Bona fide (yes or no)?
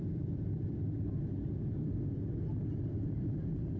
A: yes